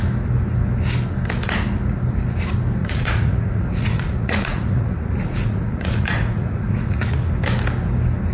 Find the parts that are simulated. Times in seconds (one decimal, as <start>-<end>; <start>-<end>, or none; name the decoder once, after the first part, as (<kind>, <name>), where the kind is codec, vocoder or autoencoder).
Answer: 2.8-7.2 (vocoder, Vocos)